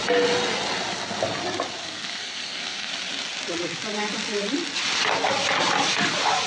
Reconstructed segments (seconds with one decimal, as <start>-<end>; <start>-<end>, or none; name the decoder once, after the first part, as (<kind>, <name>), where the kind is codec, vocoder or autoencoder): 1.8-2.9 (codec, SNAC)